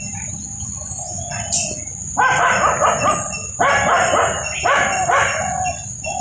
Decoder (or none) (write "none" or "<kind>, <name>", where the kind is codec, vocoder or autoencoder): none